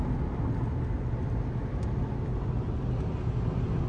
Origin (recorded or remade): recorded